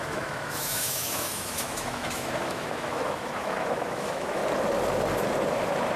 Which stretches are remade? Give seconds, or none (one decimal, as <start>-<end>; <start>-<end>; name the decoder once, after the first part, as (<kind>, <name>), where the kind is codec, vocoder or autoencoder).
0.0-4.4 (autoencoder, DAC-VAE)